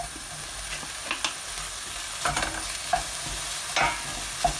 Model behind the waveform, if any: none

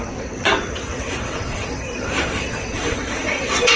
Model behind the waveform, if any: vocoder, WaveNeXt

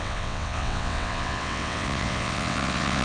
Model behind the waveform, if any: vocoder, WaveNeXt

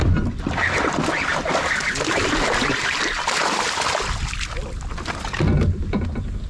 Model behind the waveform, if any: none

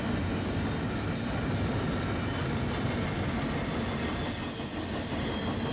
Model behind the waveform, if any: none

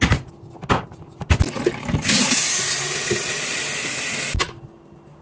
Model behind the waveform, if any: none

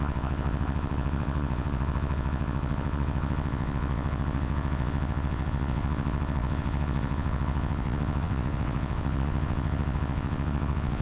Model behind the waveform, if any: vocoder, WaveNeXt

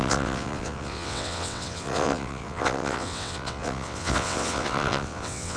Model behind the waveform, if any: vocoder, WaveNeXt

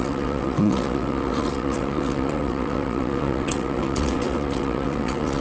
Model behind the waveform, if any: vocoder, WaveNeXt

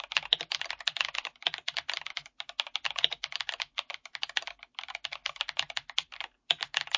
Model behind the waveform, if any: none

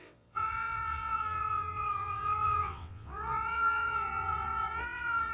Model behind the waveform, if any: vocoder, WaveNeXt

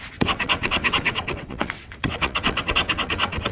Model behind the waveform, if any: vocoder, WaveNeXt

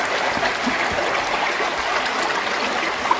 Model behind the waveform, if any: none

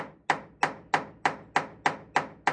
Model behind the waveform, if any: none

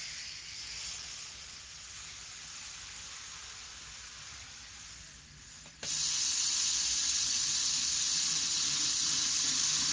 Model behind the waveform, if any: none